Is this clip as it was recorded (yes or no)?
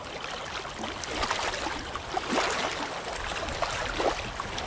yes